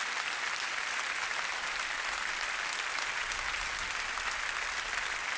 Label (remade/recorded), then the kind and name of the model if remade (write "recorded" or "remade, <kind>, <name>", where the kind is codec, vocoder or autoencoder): recorded